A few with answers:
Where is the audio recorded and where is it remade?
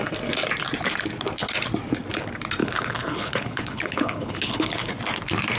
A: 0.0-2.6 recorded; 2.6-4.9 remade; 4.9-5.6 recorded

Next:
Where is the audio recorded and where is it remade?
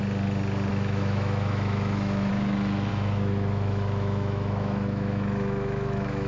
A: 0.0-0.7 recorded; 0.7-2.3 remade; 2.3-2.9 recorded; 2.9-6.3 remade